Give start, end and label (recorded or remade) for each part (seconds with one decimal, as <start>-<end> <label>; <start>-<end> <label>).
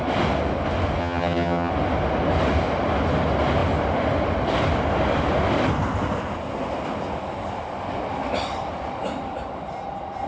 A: 0.0-1.0 recorded; 1.0-1.7 remade; 1.7-10.3 recorded